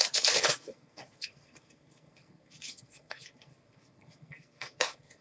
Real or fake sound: fake